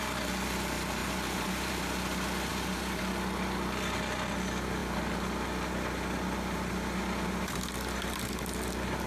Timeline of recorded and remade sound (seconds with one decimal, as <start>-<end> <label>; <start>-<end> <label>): 0.0-1.0 recorded; 1.0-1.7 remade; 1.7-2.5 recorded; 2.5-3.0 remade; 3.0-9.1 recorded